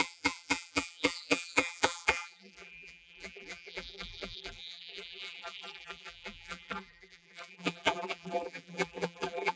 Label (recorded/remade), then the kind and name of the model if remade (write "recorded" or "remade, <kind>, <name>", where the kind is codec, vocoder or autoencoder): remade, vocoder, BigVGAN v2